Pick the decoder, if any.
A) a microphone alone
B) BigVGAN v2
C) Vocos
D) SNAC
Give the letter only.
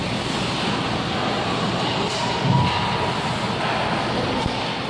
A